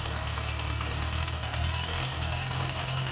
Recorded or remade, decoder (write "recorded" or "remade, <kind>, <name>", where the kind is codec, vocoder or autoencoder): remade, codec, DAC